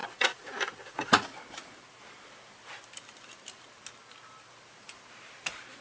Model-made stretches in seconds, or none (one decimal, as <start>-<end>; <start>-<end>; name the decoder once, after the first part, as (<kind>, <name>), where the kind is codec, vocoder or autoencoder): 0.0-1.2 (vocoder, Vocos)